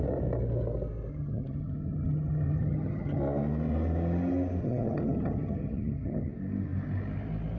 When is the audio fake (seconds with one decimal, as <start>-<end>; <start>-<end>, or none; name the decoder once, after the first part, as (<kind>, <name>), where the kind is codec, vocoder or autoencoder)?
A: 1.1-3.2 (vocoder, HiFi-GAN); 4.6-6.3